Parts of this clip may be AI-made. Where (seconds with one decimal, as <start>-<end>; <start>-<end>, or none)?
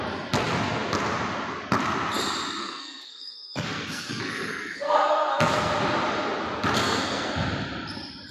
2.6-5.7; 6.8-7.3